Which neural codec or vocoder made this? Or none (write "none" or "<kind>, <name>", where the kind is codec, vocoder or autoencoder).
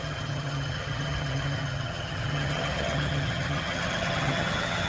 vocoder, HiFi-GAN